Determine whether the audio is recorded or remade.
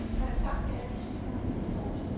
remade